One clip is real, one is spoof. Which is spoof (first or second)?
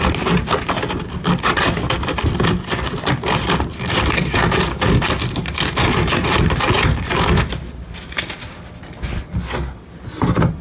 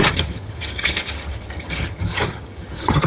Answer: second